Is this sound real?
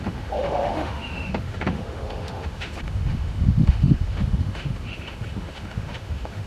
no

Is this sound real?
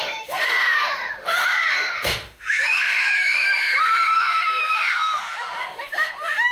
no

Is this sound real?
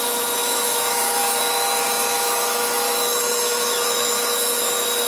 no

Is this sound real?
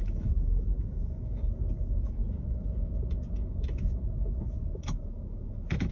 no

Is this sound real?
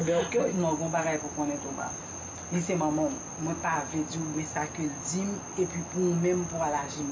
yes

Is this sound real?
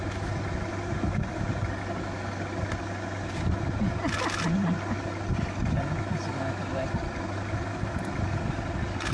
yes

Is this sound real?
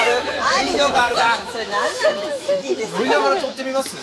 no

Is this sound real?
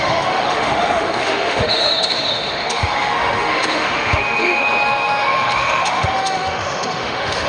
no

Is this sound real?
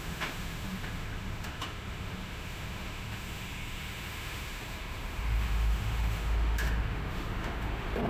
no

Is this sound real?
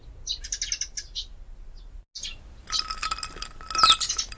yes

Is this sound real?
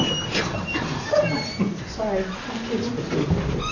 yes